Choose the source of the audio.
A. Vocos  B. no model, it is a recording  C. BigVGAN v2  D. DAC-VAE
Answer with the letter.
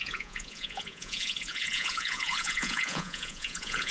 A